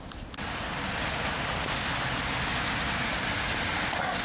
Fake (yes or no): no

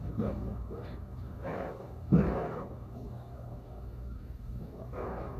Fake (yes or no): yes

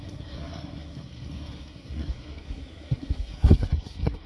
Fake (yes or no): yes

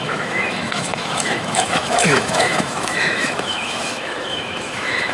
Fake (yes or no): yes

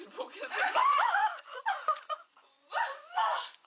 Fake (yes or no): yes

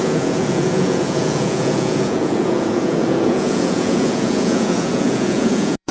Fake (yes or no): yes